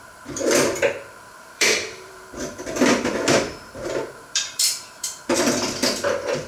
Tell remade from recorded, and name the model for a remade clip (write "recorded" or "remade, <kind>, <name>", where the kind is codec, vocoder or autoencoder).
remade, vocoder, BigVGAN v2